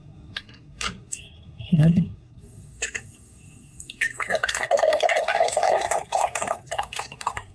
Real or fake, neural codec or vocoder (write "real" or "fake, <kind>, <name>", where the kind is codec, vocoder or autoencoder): fake, codec, SNAC